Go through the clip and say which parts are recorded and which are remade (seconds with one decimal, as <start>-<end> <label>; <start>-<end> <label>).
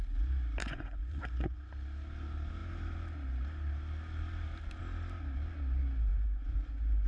0.0-0.6 recorded; 0.6-1.7 remade; 1.7-6.1 recorded; 6.1-7.1 remade